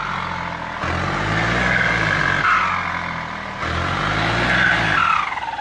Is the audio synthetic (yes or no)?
no